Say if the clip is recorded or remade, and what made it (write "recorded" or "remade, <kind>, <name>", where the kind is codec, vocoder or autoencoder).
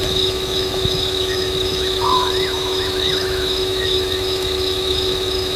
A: remade, autoencoder, DAC-VAE